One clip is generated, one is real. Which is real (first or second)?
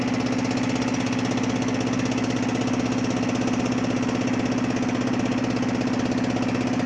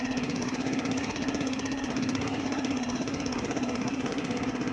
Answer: first